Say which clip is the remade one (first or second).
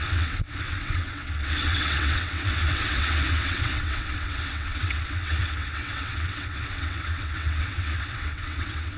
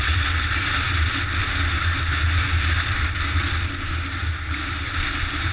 first